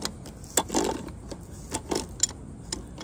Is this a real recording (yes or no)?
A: yes